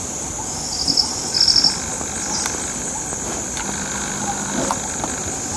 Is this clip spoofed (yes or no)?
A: no